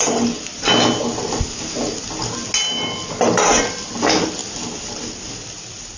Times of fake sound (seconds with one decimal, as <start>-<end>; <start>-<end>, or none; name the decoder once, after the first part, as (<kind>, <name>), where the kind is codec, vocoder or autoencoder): 4.4-6.0 (vocoder, BigVGAN v2)